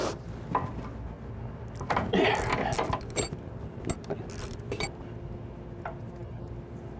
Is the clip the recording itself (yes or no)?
yes